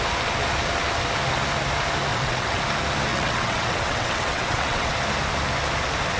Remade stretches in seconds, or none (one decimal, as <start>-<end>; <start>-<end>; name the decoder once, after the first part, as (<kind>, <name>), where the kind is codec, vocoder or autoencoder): 2.1-2.6 (vocoder, WaveNeXt); 3.1-4.9